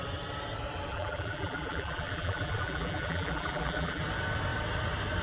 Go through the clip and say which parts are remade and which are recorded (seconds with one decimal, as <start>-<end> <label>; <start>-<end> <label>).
0.0-0.9 recorded; 0.9-4.0 remade; 4.0-5.2 recorded